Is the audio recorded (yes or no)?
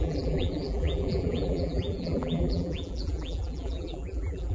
no